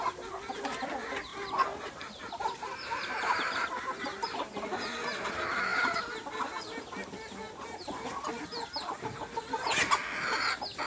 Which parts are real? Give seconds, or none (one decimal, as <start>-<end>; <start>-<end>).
0.0-1.3; 5.3-10.9